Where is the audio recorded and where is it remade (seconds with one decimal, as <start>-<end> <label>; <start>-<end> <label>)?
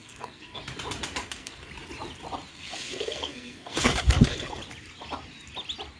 0.0-0.6 remade; 0.6-1.2 recorded; 1.2-1.7 remade; 1.7-2.5 recorded; 2.5-4.6 remade; 4.6-6.0 recorded